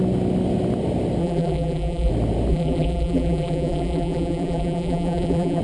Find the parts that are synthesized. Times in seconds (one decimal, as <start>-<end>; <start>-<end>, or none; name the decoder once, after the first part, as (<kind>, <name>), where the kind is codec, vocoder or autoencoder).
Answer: 1.2-2.1 (vocoder, BigVGAN v2); 2.5-5.6